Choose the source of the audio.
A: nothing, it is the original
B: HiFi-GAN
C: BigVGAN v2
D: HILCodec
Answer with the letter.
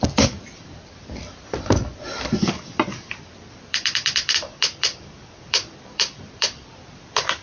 C